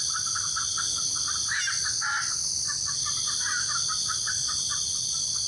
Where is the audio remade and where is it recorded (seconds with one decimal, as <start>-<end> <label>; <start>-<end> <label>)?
0.0-5.5 recorded

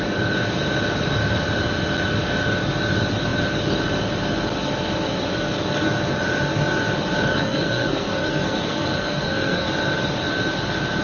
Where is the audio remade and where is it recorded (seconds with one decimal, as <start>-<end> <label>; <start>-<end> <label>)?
0.0-7.3 recorded; 7.3-9.7 remade; 9.7-11.0 recorded

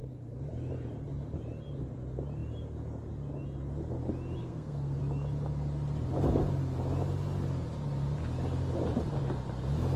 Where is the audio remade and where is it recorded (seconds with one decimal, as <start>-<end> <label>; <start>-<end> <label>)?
0.0-4.4 recorded; 4.4-5.0 remade; 5.0-10.0 recorded

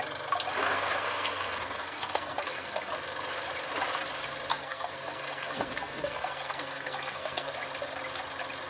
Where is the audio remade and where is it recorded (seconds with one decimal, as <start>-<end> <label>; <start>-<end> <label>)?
0.0-0.6 recorded; 0.6-2.9 remade; 2.9-4.5 recorded; 4.5-7.6 remade; 7.6-8.7 recorded